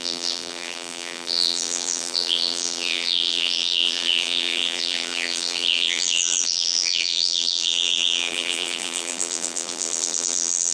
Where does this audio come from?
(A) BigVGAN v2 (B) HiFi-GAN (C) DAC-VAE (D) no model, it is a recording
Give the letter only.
A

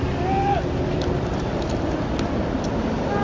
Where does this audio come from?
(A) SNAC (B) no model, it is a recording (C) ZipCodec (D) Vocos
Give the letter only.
B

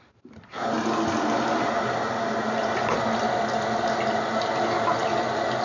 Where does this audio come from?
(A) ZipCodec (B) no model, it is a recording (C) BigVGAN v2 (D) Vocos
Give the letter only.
B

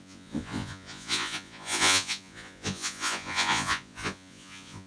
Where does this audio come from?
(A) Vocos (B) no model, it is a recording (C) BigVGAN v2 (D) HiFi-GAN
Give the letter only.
A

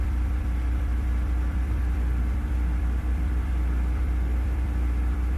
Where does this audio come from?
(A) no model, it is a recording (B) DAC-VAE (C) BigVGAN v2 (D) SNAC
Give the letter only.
C